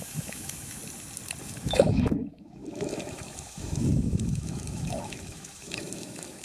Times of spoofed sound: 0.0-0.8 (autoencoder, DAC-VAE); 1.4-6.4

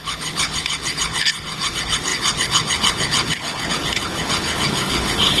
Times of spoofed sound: 0.0-5.4 (codec, HILCodec)

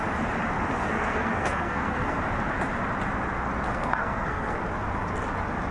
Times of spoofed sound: 0.8-2.2 (codec, SNAC); 3.7-4.6

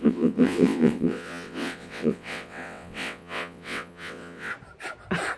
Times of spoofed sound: 0.0-4.5 (vocoder, WaveNeXt)

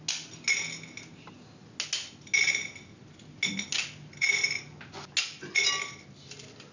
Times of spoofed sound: none

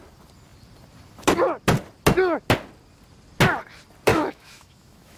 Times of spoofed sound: 4.1-5.2 (autoencoder, DAC-VAE)